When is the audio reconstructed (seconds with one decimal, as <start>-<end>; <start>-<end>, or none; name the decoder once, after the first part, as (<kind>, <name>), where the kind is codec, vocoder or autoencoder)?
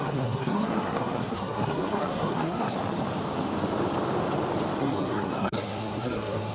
0.0-2.8 (codec, SNAC); 4.8-6.5